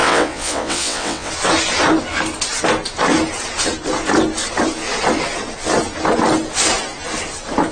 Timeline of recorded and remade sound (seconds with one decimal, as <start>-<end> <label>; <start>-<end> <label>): 0.0-1.3 remade; 1.3-7.7 recorded